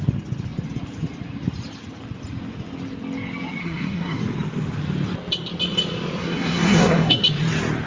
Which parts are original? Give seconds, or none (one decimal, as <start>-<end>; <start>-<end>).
0.0-3.6; 4.2-6.2; 7.2-7.9